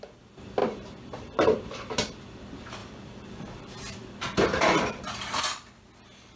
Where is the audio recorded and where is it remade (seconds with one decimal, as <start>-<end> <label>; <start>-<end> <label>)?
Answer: 0.0-0.6 recorded; 0.6-2.4 remade; 2.4-2.8 recorded; 2.8-5.8 remade; 5.8-6.4 recorded